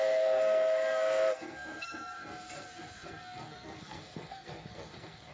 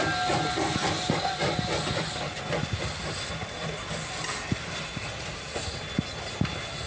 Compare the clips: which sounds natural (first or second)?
second